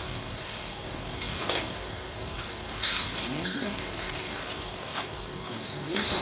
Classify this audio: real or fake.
fake